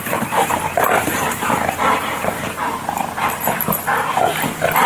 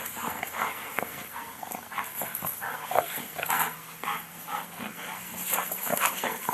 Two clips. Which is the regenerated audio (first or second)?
second